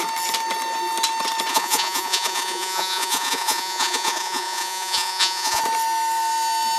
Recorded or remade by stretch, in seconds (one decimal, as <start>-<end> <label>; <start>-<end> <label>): 0.0-1.5 recorded; 1.5-5.6 remade; 5.6-6.8 recorded